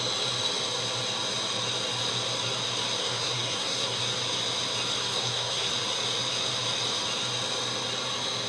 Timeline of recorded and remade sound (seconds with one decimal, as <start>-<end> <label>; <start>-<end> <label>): 0.0-3.0 recorded; 3.0-4.0 remade; 4.0-5.0 recorded; 5.0-5.7 remade; 5.7-8.5 recorded